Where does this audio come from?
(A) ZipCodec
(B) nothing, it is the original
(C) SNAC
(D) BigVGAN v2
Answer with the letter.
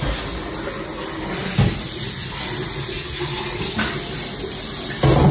B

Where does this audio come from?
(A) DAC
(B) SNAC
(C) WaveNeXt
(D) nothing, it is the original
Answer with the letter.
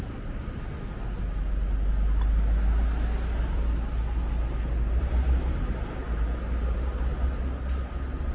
D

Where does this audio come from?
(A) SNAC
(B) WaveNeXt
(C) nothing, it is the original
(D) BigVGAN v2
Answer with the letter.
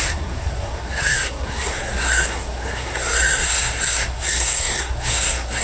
A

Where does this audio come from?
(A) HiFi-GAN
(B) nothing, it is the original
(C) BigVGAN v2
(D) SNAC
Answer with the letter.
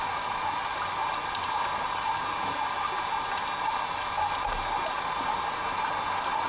B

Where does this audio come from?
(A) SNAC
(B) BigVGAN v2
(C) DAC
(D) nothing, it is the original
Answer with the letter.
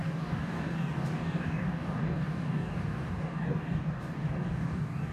C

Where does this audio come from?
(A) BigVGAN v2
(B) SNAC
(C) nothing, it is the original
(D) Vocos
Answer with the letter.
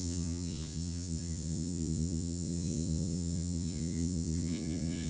D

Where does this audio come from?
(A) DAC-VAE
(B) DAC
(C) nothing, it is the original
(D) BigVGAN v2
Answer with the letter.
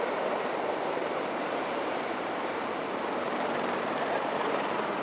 D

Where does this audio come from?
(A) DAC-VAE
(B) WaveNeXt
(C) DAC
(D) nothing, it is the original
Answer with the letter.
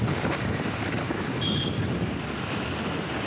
D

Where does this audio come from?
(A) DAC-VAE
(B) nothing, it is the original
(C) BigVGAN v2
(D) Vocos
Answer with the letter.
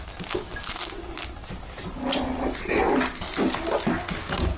B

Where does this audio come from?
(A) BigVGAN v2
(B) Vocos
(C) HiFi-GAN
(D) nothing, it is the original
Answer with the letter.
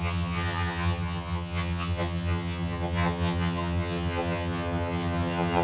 C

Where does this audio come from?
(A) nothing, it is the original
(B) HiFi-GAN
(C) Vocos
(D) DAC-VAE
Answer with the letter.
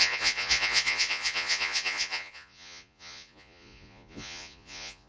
C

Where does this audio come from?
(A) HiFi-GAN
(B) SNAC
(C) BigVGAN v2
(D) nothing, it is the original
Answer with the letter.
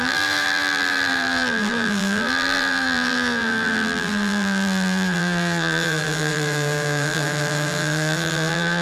C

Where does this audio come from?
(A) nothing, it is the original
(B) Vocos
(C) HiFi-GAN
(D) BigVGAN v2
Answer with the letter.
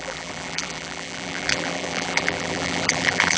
D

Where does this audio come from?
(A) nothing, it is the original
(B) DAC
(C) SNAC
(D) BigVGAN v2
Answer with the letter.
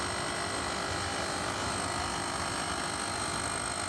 A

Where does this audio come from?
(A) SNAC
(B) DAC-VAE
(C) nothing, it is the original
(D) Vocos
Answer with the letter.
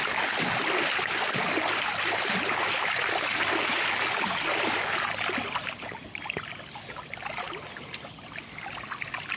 C